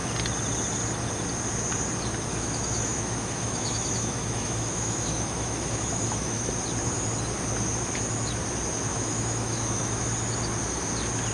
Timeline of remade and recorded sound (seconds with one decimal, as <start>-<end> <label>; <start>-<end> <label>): 0.0-2.3 recorded; 2.3-6.5 remade; 6.5-8.9 recorded; 8.9-10.0 remade; 10.0-11.3 recorded